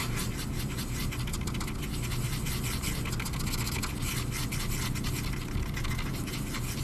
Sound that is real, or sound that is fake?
real